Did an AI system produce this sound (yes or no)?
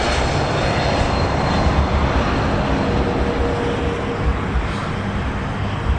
no